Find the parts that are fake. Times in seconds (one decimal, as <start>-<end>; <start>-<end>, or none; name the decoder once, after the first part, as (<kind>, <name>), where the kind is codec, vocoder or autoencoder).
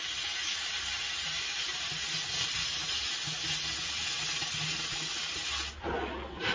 0.0-2.8 (vocoder, BigVGAN v2)